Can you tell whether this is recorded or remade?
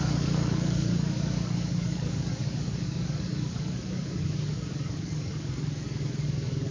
remade